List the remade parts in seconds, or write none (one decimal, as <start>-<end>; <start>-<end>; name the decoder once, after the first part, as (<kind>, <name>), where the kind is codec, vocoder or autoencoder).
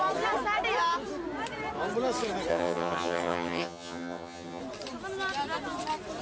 2.5-4.6 (vocoder, HiFi-GAN)